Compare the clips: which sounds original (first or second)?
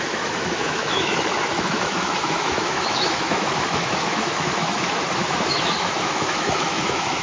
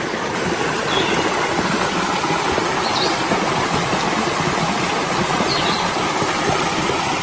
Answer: second